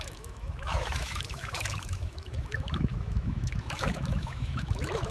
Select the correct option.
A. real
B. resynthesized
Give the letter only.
B